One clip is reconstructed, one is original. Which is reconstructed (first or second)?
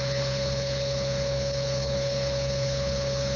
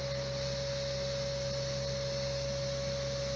first